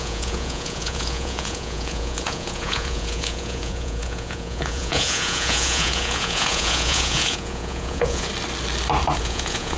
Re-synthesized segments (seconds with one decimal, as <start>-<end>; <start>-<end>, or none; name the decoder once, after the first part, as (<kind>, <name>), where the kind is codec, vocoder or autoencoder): 0.0-8.3 (vocoder, Vocos); 9.2-9.8